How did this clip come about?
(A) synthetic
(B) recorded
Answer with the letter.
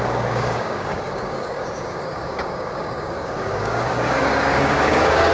A